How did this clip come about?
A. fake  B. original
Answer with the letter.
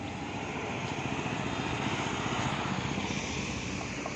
B